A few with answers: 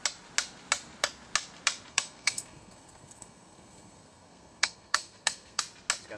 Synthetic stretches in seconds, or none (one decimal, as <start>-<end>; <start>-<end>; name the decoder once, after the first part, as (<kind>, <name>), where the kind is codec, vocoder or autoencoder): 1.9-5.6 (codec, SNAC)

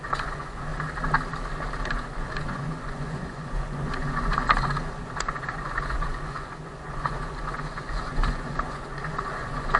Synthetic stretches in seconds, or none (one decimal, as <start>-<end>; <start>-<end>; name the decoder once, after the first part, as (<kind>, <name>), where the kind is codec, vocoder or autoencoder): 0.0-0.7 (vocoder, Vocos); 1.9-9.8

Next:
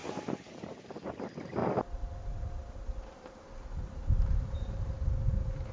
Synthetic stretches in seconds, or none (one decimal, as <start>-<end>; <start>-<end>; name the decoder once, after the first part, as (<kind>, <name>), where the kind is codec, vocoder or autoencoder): 0.0-1.2 (vocoder, BigVGAN v2); 1.6-4.9